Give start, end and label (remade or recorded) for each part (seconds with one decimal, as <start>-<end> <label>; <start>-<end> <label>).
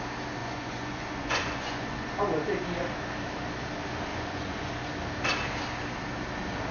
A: 0.0-0.4 recorded; 0.4-2.1 remade; 2.1-4.1 recorded; 4.1-4.7 remade; 4.7-6.7 recorded